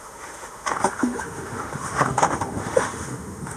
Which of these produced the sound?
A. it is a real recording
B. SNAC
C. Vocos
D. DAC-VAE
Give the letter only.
D